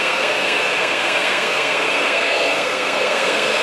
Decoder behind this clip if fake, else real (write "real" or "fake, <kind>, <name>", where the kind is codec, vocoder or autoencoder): fake, codec, SNAC